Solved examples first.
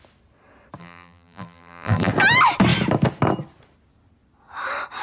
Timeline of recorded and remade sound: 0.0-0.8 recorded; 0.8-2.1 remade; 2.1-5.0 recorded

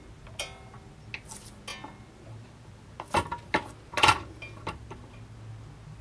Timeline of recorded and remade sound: 0.0-6.0 recorded